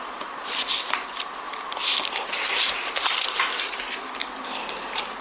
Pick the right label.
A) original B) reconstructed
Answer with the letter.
B